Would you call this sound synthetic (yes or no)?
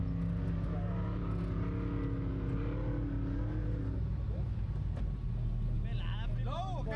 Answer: no